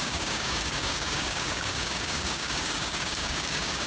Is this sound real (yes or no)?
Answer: no